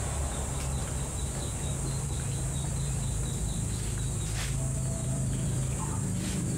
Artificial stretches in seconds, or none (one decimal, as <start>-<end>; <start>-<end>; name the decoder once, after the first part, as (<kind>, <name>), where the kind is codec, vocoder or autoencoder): 0.8-4.2 (vocoder, BigVGAN v2); 5.0-6.6